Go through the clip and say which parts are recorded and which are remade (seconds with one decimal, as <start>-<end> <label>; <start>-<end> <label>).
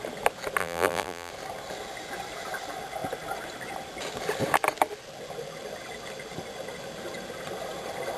0.0-0.6 recorded; 0.6-1.3 remade; 1.3-8.2 recorded